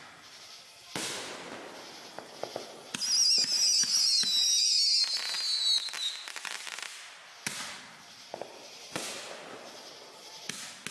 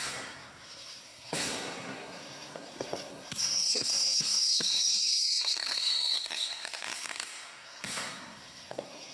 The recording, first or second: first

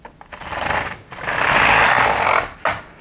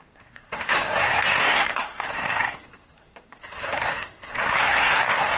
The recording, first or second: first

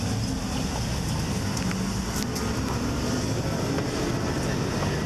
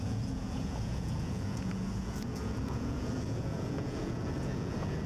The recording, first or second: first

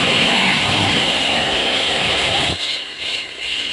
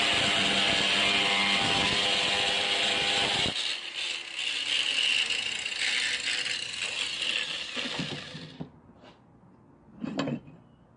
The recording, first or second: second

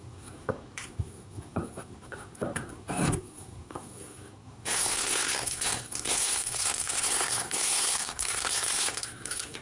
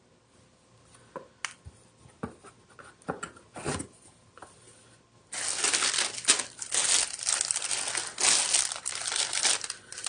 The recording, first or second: second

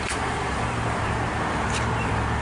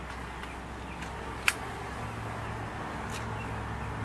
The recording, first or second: second